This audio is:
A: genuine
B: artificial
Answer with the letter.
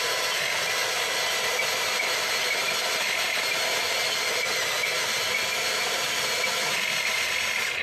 A